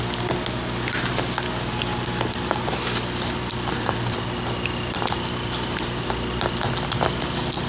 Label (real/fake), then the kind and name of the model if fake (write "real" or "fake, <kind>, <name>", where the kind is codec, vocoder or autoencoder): real